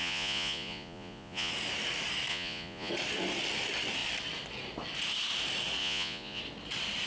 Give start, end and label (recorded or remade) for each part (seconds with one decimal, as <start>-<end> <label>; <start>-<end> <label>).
0.0-1.5 remade; 1.5-2.3 recorded; 2.3-2.9 remade; 2.9-5.8 recorded; 5.8-6.4 remade; 6.4-7.1 recorded